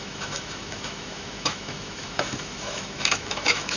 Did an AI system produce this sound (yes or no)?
yes